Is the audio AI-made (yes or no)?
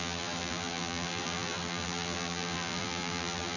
yes